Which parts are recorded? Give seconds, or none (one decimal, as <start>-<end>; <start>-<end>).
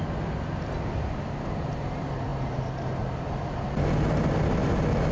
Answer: 0.0-5.1